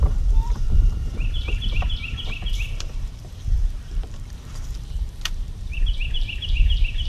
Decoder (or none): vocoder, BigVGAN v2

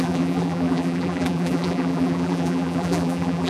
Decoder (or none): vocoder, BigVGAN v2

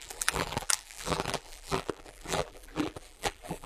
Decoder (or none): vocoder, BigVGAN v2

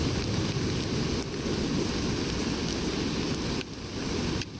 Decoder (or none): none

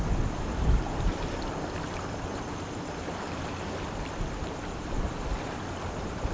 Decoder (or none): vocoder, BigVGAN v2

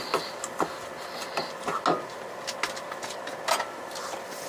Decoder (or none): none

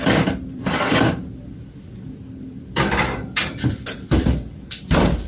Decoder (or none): vocoder, BigVGAN v2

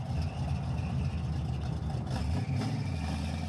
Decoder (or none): none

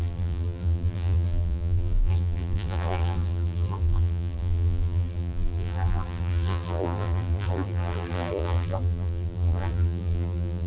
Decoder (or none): vocoder, BigVGAN v2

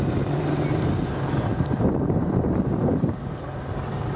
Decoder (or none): vocoder, BigVGAN v2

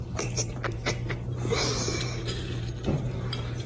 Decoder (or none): vocoder, BigVGAN v2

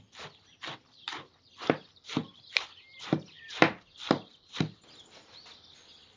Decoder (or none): vocoder, BigVGAN v2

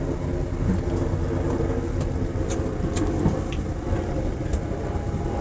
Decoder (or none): none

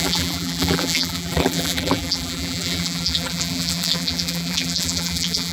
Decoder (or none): vocoder, BigVGAN v2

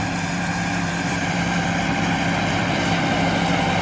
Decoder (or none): vocoder, BigVGAN v2